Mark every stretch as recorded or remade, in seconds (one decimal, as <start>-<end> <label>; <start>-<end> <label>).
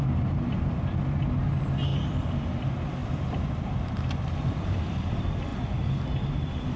0.0-1.9 recorded; 1.9-2.6 remade; 2.6-3.0 recorded; 3.0-5.0 remade; 5.0-6.8 recorded